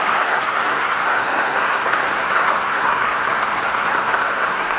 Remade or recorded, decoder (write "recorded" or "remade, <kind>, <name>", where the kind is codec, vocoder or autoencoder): remade, codec, SNAC